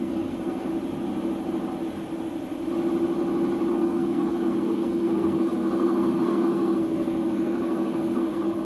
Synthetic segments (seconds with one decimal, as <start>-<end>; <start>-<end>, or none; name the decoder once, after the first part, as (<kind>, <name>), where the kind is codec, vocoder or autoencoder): 0.0-0.7 (codec, SNAC); 3.7-8.6